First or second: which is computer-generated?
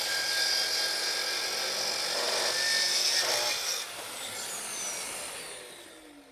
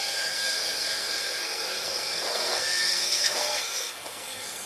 second